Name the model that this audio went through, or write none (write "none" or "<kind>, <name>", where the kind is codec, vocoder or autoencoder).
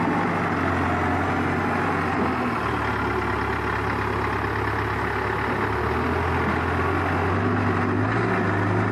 none